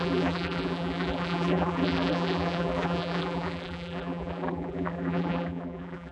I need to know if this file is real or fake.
fake